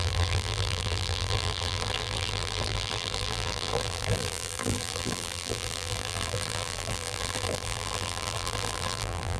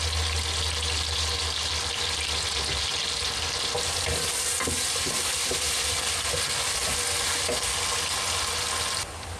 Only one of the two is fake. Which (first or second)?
first